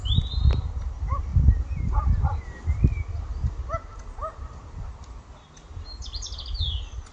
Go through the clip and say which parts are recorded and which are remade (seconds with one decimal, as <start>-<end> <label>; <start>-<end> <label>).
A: 0.0-7.1 recorded